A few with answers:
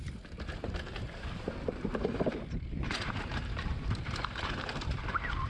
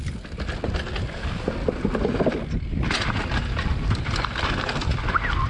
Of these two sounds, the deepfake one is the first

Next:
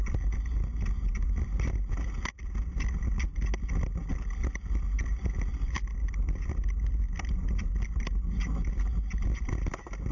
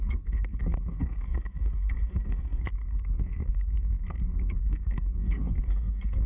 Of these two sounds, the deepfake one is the second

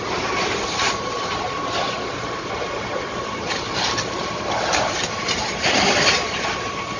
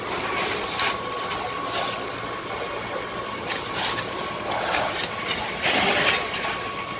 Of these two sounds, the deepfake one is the first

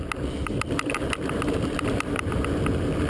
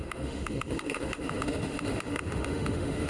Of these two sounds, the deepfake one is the second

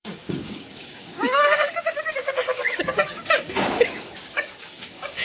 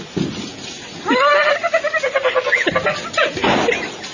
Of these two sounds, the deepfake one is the first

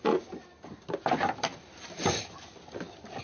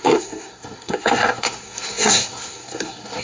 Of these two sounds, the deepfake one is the second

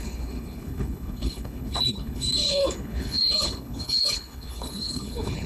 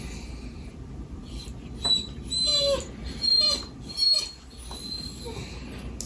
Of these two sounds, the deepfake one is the first